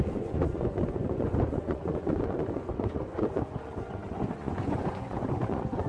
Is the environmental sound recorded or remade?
remade